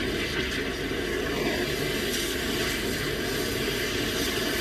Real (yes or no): yes